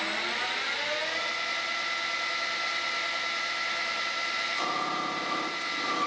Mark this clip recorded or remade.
recorded